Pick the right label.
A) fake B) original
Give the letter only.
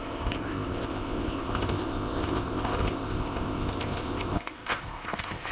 A